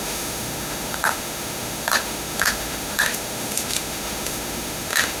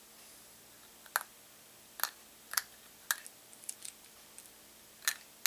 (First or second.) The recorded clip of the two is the second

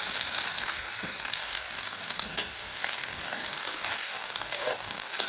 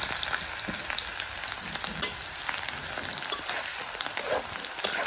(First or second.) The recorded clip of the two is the second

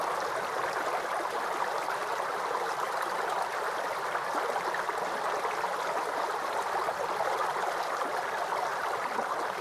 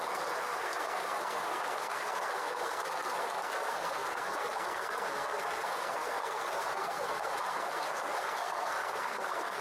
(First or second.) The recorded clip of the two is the first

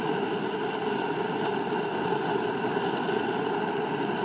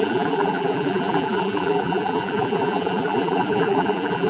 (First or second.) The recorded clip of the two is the first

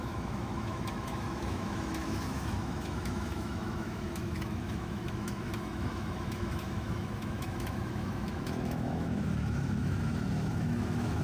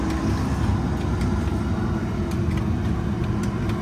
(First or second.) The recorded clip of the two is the second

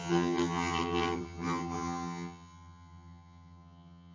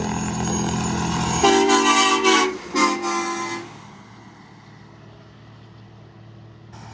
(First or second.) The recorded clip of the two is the second